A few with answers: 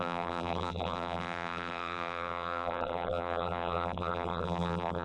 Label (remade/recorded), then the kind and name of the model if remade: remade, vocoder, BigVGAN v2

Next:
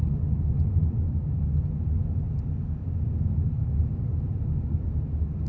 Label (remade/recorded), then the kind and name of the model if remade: recorded